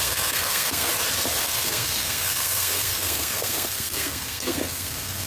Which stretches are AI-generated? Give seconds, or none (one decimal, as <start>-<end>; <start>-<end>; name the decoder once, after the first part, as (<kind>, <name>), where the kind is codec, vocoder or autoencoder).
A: 0.0-0.9 (codec, SNAC); 1.4-5.3